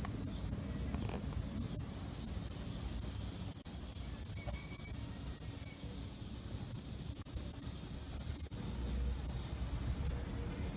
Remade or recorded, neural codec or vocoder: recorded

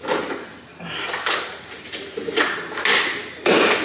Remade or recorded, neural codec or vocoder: recorded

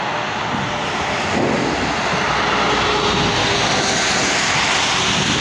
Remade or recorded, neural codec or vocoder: recorded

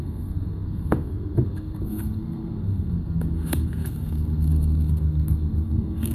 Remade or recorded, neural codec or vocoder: remade, codec, SNAC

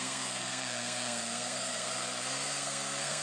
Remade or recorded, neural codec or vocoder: remade, codec, SNAC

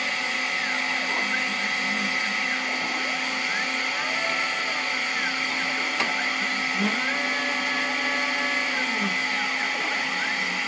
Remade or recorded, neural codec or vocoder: recorded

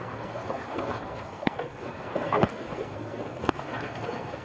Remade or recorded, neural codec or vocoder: remade, codec, SNAC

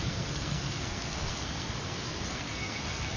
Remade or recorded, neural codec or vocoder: remade, codec, SNAC